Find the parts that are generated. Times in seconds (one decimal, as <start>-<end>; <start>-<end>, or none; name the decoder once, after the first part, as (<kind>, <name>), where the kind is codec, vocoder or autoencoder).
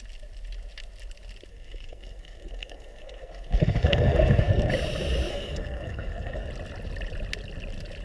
1.5-4.7 (codec, SNAC); 5.3-6.5